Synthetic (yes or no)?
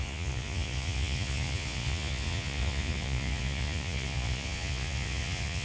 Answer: yes